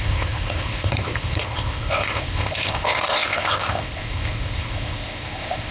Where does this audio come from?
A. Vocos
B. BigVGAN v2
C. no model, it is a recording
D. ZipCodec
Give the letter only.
D